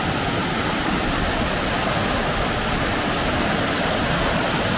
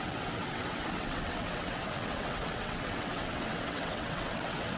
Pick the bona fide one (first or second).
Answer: first